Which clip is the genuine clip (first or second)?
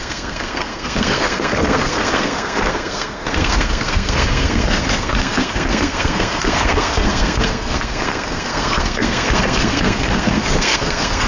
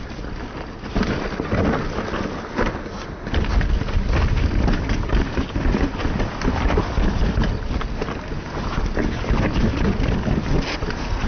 second